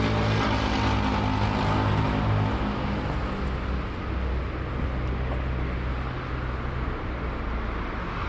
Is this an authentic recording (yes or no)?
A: yes